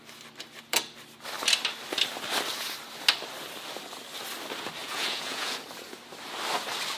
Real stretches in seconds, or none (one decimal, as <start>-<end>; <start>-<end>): 0.0-4.8; 5.5-7.0